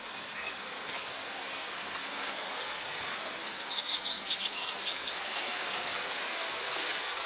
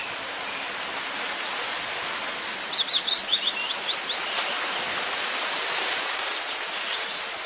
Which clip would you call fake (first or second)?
first